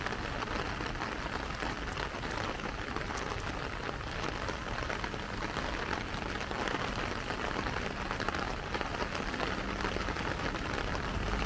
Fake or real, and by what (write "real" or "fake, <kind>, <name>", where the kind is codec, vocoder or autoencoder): real